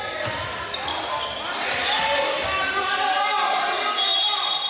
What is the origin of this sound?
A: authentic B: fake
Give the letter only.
A